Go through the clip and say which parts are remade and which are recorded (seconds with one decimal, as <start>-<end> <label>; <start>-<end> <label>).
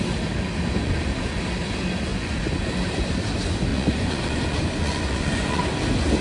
0.0-0.8 recorded; 0.8-1.4 remade; 1.4-2.1 recorded; 2.1-2.7 remade; 2.7-3.7 recorded; 3.7-5.6 remade; 5.6-6.2 recorded